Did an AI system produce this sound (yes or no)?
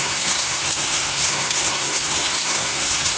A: yes